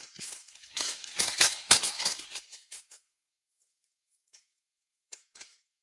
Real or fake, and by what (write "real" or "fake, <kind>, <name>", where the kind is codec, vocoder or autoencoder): fake, codec, SNAC